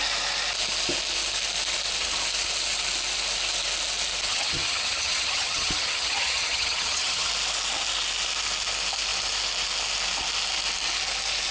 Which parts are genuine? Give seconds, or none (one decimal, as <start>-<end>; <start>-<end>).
0.0-4.3; 7.3-11.5